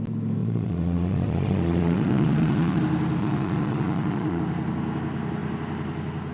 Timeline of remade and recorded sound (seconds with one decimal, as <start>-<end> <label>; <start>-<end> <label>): 0.0-0.4 recorded; 0.4-2.8 remade; 2.8-3.2 recorded; 3.2-4.4 remade; 4.4-6.3 recorded